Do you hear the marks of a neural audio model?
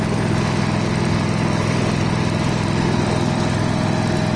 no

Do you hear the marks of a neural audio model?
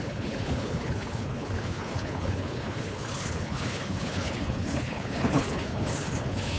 yes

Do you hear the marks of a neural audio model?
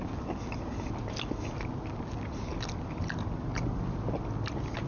no